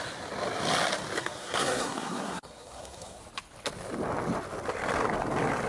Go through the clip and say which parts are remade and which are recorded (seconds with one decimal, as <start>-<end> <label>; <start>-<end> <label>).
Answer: 0.0-1.2 recorded; 1.2-3.2 remade; 3.2-5.7 recorded